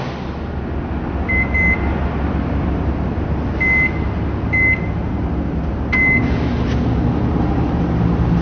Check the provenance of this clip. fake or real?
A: real